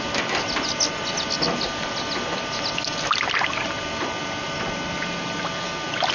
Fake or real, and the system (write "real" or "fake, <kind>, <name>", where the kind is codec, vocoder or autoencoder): real